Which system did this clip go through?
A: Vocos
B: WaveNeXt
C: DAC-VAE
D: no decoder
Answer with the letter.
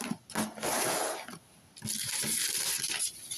D